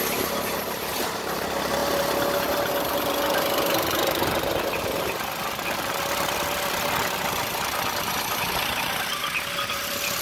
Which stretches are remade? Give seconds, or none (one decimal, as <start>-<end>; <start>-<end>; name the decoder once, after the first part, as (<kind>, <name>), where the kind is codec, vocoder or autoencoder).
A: none